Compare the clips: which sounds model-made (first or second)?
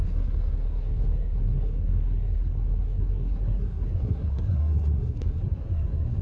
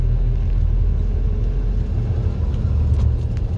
first